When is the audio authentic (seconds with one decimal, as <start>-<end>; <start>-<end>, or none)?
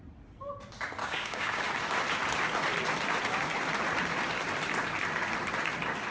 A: 0.0-1.0; 1.6-6.1